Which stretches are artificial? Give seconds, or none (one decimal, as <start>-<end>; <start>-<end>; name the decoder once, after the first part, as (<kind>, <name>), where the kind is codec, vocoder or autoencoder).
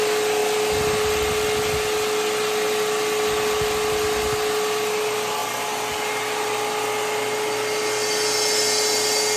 none